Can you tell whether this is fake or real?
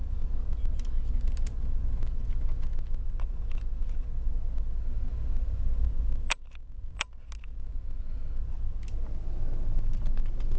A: real